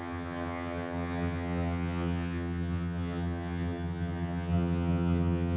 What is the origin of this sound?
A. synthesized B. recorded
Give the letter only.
A